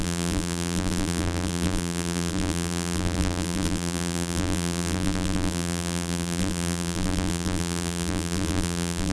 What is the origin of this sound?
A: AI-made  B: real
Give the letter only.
A